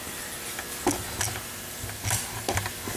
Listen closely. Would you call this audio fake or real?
real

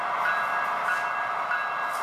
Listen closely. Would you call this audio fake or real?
real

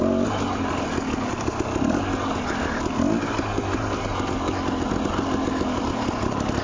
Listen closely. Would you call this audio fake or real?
real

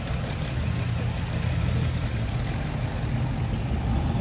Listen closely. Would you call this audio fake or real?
real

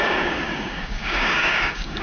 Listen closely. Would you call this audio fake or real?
fake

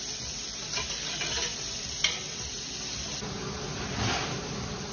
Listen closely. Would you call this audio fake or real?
real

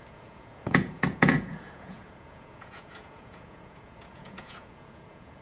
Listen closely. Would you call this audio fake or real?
fake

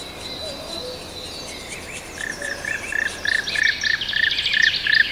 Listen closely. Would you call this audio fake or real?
real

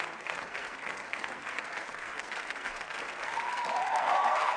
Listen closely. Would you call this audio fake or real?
fake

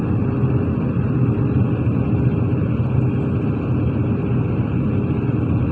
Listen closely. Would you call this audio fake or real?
real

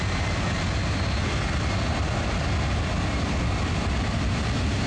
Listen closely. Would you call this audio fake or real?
real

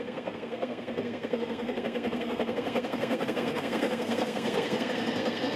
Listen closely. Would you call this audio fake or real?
fake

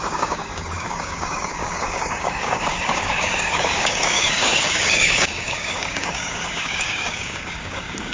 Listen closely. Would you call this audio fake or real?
fake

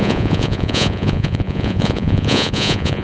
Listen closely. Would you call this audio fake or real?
fake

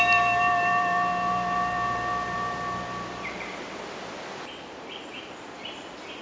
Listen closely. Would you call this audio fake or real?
real